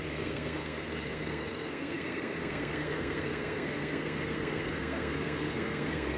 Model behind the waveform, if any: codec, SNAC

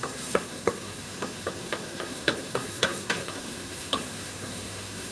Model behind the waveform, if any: codec, SNAC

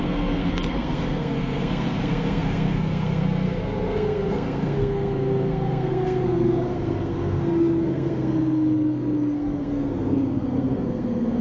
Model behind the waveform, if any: codec, SNAC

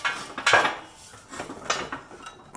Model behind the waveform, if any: none